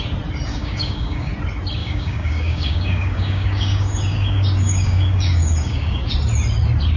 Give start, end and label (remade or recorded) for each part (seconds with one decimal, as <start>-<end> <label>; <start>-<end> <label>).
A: 0.0-0.5 recorded; 0.5-1.3 remade; 1.3-1.8 recorded; 1.8-6.0 remade; 6.0-7.0 recorded